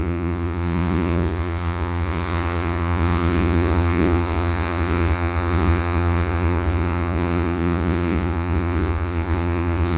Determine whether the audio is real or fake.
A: fake